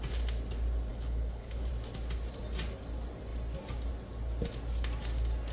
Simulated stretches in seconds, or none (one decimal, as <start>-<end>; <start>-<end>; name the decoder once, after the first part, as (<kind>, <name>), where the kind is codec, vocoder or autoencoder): 0.9-1.7 (codec, HILCodec)